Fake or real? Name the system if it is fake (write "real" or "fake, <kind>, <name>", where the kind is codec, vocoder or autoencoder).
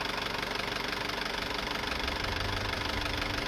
real